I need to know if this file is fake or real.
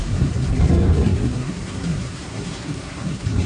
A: fake